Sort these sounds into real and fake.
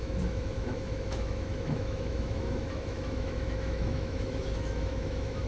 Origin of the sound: fake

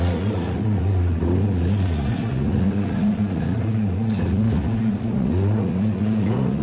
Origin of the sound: fake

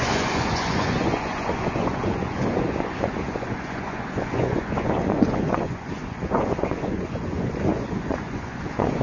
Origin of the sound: fake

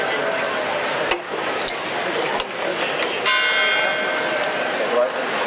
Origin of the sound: real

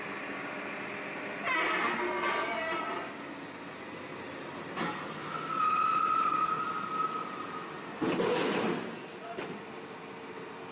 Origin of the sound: real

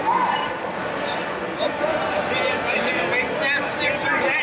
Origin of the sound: real